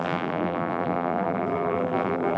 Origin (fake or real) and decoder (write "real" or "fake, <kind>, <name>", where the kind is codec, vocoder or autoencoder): fake, vocoder, BigVGAN v2